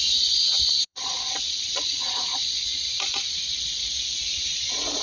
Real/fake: fake